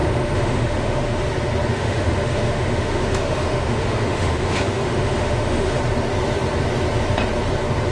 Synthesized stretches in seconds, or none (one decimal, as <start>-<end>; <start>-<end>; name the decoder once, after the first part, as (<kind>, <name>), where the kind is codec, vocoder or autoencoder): 0.0-1.2 (autoencoder, DAC-VAE); 1.7-5.8